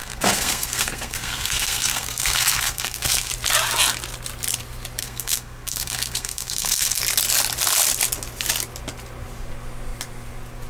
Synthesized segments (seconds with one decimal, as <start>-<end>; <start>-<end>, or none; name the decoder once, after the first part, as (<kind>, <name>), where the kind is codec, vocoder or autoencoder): 0.0-3.3 (codec, SNAC); 5.0-7.0